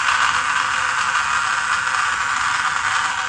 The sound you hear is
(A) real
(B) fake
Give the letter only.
A